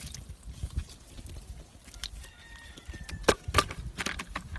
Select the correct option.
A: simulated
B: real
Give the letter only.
B